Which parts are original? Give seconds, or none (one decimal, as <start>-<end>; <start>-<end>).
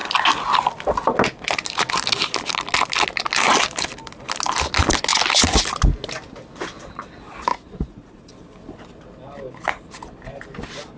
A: 0.0-7.5; 8.3-11.0